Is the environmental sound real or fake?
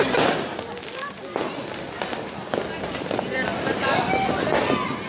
real